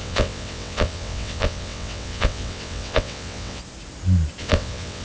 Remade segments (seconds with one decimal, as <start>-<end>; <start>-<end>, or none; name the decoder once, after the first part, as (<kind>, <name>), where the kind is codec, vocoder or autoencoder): 0.0-3.6 (vocoder, WaveNeXt); 4.4-5.0